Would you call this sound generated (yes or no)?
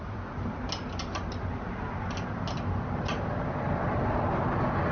no